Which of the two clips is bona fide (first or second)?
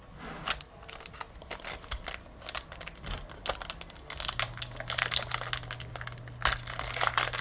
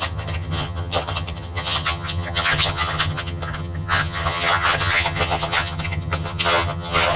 first